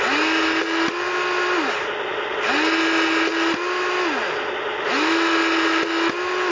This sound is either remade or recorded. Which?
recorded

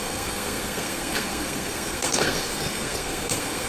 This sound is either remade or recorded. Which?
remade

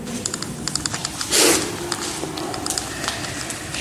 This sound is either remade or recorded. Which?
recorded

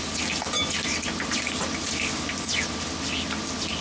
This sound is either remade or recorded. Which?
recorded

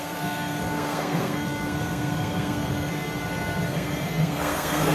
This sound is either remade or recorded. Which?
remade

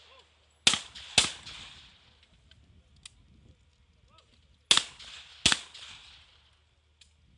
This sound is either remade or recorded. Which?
recorded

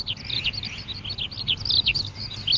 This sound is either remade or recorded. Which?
recorded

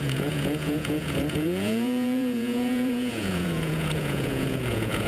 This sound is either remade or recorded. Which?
remade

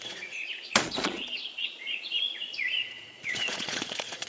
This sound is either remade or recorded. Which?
remade